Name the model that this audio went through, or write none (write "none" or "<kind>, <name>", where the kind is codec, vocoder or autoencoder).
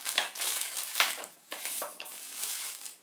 codec, DAC